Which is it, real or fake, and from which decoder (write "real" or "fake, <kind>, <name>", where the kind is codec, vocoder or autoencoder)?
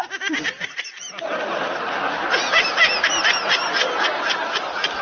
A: real